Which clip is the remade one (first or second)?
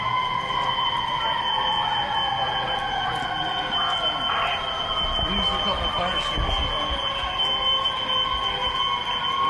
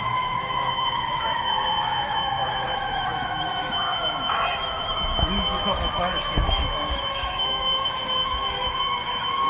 second